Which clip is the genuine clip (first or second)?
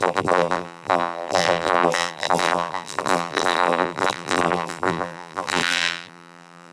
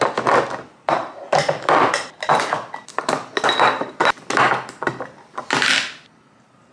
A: second